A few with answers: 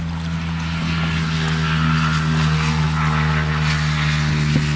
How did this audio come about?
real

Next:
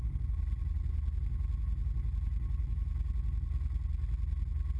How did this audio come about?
real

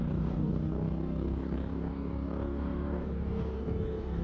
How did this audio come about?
fake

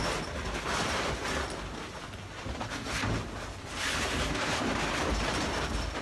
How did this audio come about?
real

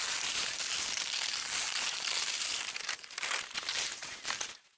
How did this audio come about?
fake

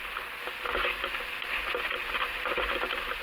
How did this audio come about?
real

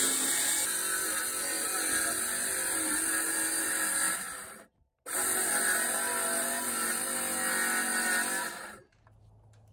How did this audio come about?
real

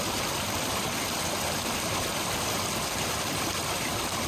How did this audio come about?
fake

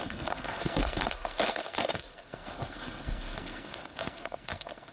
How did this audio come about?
fake